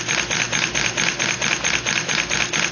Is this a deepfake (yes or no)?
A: no